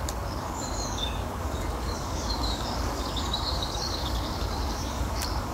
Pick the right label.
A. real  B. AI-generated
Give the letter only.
B